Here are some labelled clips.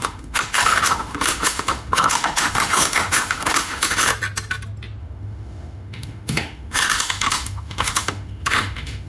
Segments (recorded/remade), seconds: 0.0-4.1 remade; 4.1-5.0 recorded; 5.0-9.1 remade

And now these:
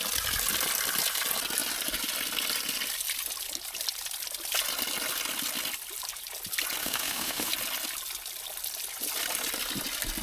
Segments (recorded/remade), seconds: 0.0-6.8 recorded; 6.8-7.5 remade; 7.5-10.2 recorded

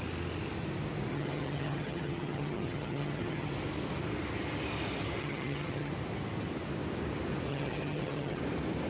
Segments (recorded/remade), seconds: 0.0-1.1 recorded; 1.1-3.5 remade; 3.5-5.2 recorded; 5.2-5.9 remade; 5.9-7.5 recorded; 7.5-8.4 remade; 8.4-8.9 recorded

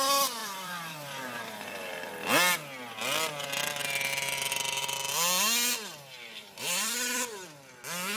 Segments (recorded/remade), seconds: 0.0-0.4 recorded; 0.4-2.1 remade; 2.1-6.4 recorded; 6.4-7.3 remade; 7.3-8.2 recorded

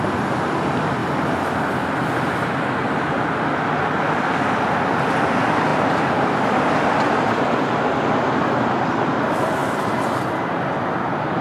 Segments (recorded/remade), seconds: 0.0-11.4 recorded

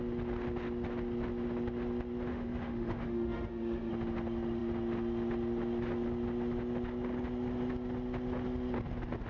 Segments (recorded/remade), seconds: 0.0-2.3 recorded; 2.3-3.9 remade; 3.9-9.3 recorded

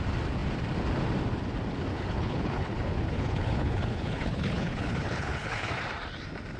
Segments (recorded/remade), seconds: 0.0-1.9 recorded; 1.9-5.7 remade; 5.7-6.6 recorded